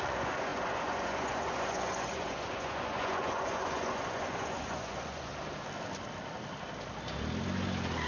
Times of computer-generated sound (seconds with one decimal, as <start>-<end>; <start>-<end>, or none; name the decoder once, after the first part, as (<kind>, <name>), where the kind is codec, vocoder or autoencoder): 0.0-5.3 (vocoder, Vocos)